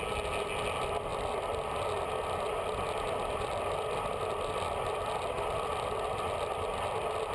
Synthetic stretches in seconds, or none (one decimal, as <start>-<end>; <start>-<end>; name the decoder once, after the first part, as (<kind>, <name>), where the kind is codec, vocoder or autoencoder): none